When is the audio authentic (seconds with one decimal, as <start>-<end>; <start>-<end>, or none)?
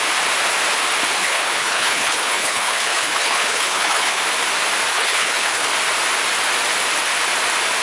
0.0-1.2; 4.2-4.9; 5.7-7.8